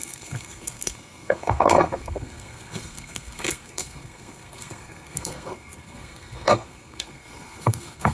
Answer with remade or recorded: remade